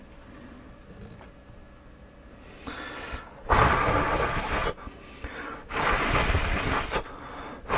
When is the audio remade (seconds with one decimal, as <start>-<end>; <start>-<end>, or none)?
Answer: none